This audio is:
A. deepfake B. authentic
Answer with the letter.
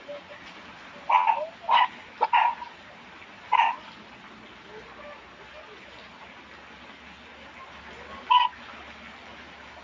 B